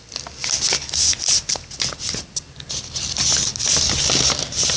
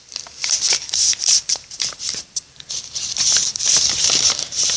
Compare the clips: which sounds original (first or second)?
first